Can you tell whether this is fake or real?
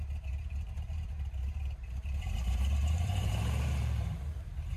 fake